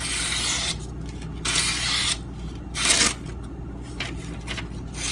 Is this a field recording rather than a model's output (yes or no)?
yes